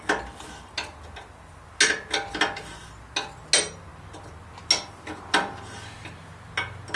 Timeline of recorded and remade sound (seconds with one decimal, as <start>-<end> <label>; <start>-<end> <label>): 0.0-7.0 recorded